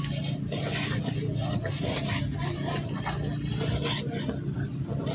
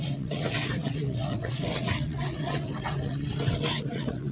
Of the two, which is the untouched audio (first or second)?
first